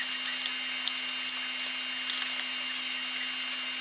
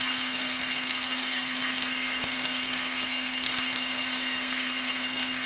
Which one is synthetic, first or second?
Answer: second